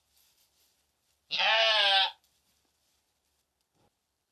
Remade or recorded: recorded